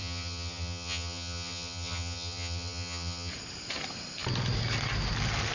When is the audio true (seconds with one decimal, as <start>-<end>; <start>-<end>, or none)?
3.3-5.5

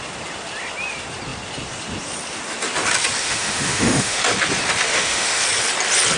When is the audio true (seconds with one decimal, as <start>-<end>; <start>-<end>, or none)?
0.0-3.2; 4.2-4.9; 5.4-6.2

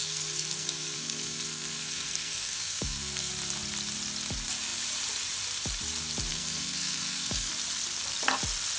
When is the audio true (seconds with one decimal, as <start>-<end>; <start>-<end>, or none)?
3.3-6.3; 7.5-8.8

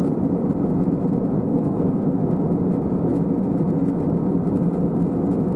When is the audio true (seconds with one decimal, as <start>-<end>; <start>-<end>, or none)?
0.0-1.5; 2.2-5.6